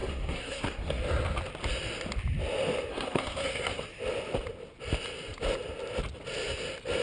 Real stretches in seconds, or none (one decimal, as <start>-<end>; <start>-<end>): 1.0-2.9; 3.8-7.0